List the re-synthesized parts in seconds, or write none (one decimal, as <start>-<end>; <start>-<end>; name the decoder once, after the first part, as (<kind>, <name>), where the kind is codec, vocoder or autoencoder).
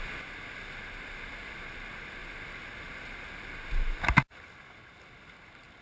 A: none